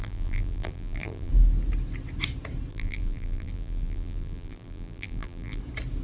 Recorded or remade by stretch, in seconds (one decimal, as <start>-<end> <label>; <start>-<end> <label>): 0.0-1.3 remade; 1.3-2.7 recorded; 2.7-5.6 remade; 5.6-6.0 recorded

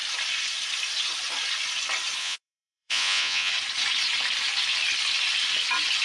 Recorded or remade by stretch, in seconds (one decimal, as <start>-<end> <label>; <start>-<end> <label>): 0.0-2.2 recorded; 2.2-3.5 remade; 3.5-6.0 recorded

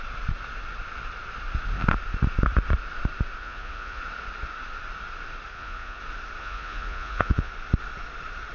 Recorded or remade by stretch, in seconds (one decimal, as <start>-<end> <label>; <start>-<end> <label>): 0.0-3.4 recorded; 3.4-4.0 remade; 4.0-5.5 recorded; 5.5-6.0 remade; 6.0-6.4 recorded; 6.4-7.5 remade; 7.5-8.5 recorded

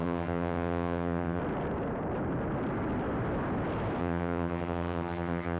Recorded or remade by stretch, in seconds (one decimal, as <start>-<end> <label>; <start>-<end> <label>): 0.0-1.4 remade; 1.4-4.0 recorded; 4.0-5.6 remade

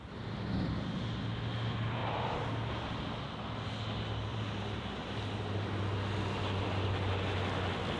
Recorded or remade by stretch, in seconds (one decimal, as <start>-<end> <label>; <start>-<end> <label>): 0.0-2.0 recorded; 2.0-2.5 remade; 2.5-4.3 recorded; 4.3-5.8 remade; 5.8-8.0 recorded

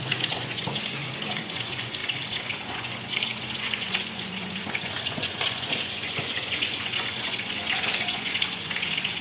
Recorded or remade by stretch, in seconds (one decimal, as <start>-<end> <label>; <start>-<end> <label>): 0.0-9.2 remade